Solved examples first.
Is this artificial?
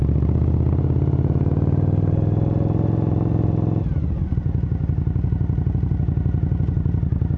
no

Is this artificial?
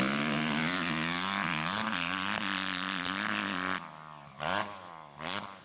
no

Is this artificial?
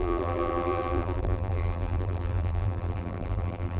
yes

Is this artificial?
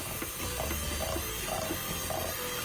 no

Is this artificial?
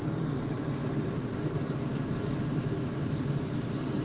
yes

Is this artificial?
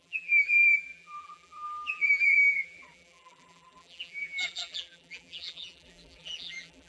yes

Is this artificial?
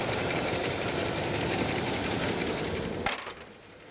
yes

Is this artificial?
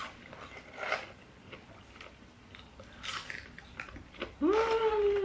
yes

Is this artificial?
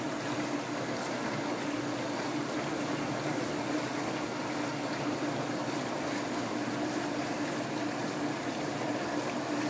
no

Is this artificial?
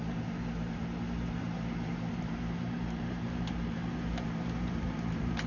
yes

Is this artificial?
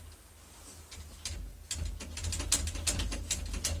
no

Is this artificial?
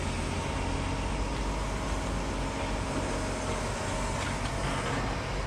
no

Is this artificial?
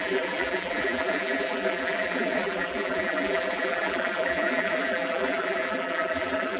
yes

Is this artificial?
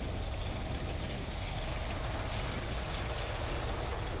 no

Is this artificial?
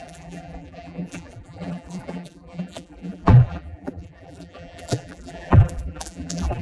yes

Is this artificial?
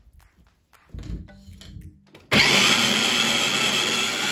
no